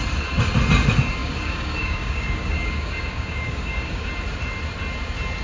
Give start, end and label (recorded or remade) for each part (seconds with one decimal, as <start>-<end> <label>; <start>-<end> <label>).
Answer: 0.0-1.2 recorded; 1.2-4.1 remade; 4.1-5.4 recorded